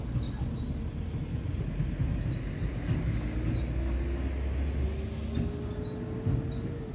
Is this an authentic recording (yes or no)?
yes